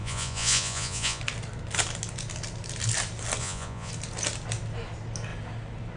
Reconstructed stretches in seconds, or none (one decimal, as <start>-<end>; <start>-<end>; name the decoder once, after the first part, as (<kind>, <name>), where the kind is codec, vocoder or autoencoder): 0.0-1.2 (vocoder, Vocos); 3.4-3.9